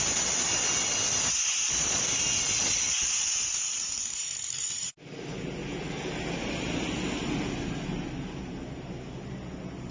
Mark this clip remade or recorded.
recorded